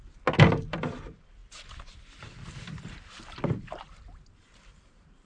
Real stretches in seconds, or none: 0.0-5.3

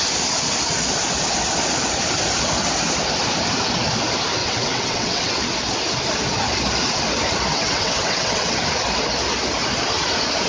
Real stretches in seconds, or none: 0.0-4.4; 5.4-7.5; 8.6-10.5

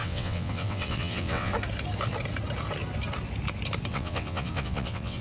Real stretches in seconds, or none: 1.5-3.9

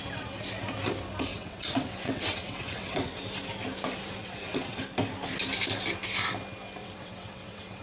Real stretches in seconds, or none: 0.0-1.3; 3.2-4.2; 4.8-6.8